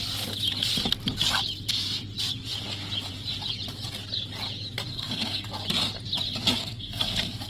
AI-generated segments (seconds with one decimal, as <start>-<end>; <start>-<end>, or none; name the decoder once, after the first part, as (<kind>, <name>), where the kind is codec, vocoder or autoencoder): 4.9-5.5 (codec, SNAC); 6.6-7.5